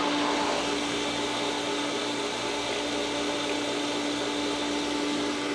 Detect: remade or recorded recorded